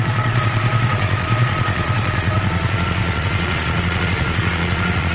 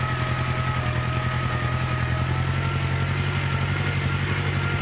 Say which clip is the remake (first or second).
first